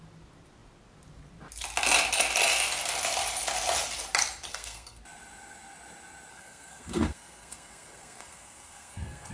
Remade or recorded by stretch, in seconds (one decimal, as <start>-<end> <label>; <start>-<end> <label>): 0.0-4.5 recorded; 4.5-5.0 remade; 5.0-6.3 recorded; 6.3-9.3 remade